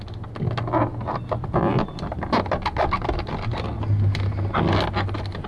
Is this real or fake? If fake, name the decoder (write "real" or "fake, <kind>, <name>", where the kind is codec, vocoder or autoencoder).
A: real